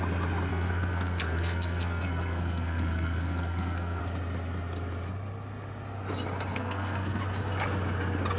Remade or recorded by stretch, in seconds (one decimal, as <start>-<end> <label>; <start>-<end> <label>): 0.0-0.5 recorded; 0.5-4.0 remade; 4.0-6.5 recorded; 6.5-7.2 remade; 7.2-8.4 recorded